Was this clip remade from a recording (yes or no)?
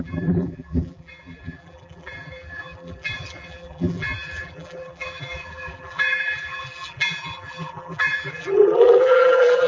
yes